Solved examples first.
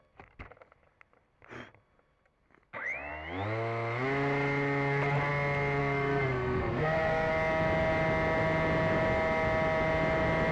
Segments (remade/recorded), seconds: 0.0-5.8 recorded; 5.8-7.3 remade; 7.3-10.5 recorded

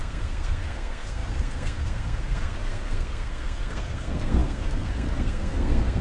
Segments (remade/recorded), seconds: 0.0-6.0 remade

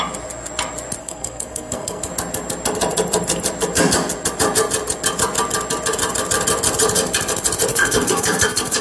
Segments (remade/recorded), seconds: 0.0-1.0 recorded; 1.0-2.1 remade; 2.1-7.7 recorded; 7.7-8.8 remade